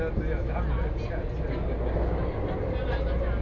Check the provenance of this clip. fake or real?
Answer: real